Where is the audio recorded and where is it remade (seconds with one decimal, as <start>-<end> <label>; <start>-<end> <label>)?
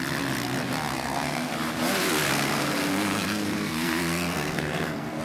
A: 0.0-0.9 recorded; 0.9-1.5 remade; 1.5-2.3 recorded; 2.3-5.2 remade